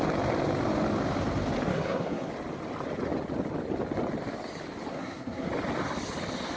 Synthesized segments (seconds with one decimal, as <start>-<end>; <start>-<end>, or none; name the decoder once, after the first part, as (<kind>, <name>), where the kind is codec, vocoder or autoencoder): 1.7-2.3 (codec, SNAC); 4.9-5.5